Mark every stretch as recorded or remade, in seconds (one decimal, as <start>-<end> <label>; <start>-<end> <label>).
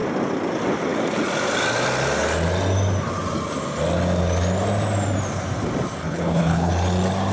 0.0-6.0 recorded; 6.0-6.7 remade; 6.7-7.3 recorded